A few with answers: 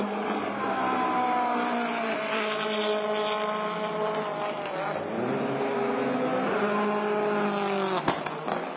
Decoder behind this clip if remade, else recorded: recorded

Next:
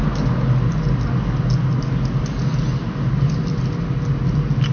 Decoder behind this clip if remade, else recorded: recorded